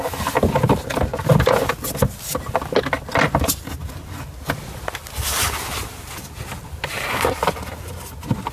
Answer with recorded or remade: recorded